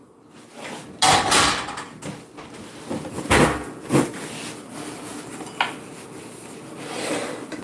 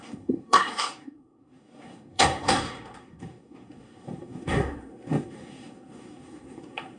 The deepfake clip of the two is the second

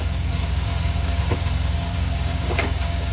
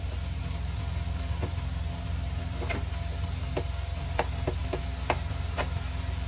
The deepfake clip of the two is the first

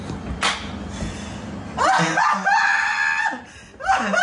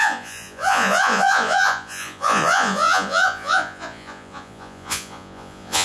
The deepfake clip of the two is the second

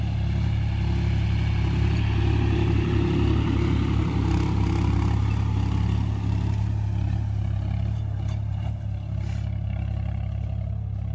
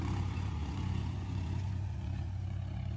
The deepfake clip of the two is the second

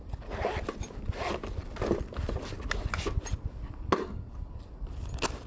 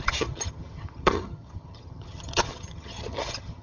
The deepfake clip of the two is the second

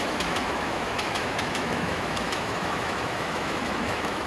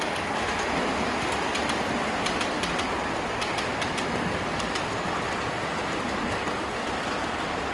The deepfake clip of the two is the first